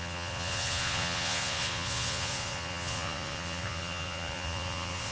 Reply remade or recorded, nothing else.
remade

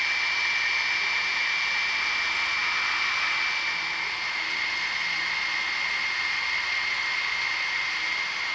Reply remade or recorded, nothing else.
recorded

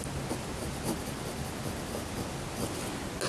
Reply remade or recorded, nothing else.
recorded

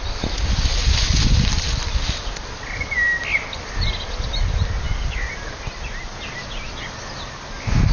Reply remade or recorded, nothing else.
recorded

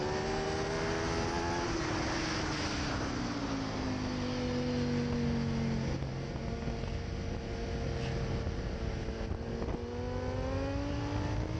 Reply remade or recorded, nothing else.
recorded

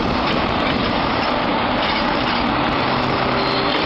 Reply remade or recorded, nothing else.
recorded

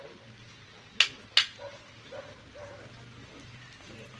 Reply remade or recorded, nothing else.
recorded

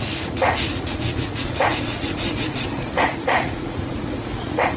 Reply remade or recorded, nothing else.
remade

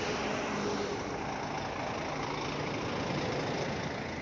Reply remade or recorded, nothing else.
recorded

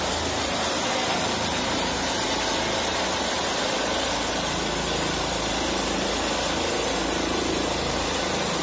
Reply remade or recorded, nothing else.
recorded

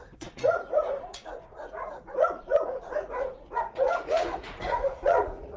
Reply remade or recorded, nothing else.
remade